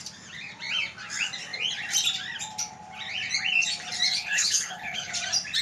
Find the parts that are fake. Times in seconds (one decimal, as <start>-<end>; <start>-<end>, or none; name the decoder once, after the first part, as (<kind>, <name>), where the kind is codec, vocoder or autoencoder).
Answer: 4.2-5.1 (codec, HILCodec)